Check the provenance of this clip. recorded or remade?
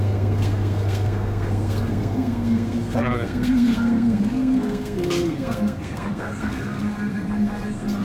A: remade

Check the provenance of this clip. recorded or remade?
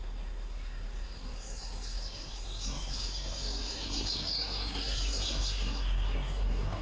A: remade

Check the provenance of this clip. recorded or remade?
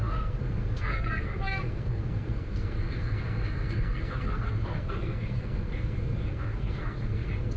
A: remade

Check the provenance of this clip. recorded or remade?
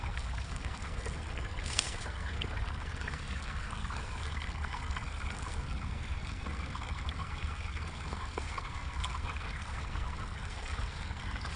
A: remade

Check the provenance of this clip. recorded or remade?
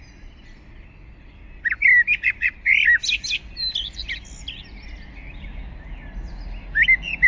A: recorded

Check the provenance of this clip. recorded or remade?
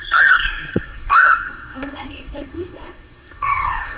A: remade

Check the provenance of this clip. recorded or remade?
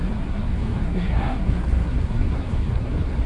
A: remade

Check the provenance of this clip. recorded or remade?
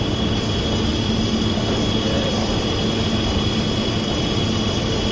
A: recorded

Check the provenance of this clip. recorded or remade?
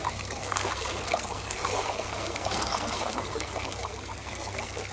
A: remade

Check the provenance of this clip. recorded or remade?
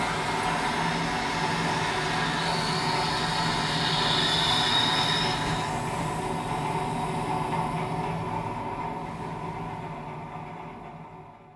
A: recorded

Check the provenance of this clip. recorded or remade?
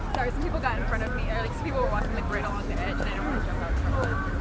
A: recorded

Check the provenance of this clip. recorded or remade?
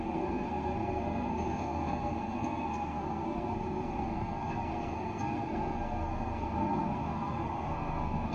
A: remade